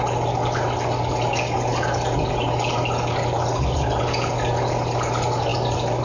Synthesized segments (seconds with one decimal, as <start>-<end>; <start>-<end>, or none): none